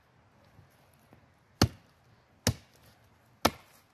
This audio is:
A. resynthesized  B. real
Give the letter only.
B